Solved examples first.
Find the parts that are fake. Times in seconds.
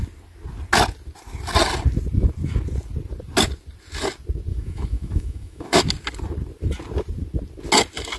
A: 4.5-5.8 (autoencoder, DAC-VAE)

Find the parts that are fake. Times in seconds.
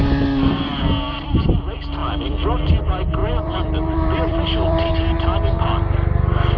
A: 2.0-2.7 (vocoder, BigVGAN v2); 3.2-4.9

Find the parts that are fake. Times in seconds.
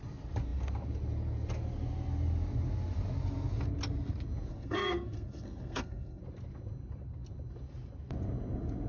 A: 4.5-6.2 (codec, SNAC)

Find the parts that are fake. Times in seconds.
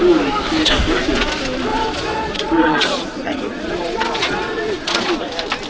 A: 1.7-5.1 (vocoder, Vocos)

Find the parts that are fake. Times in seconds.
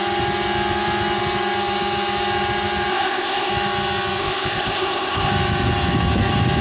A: 2.9-3.5 (codec, ZipCodec); 4.2-5.3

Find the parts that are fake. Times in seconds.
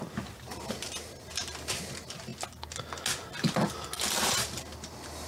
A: 0.0-2.3 (vocoder, BigVGAN v2); 4.2-5.3